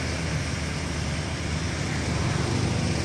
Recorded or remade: recorded